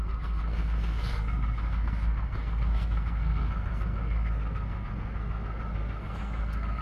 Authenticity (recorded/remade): remade